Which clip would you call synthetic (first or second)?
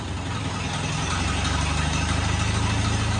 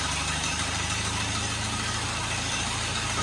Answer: second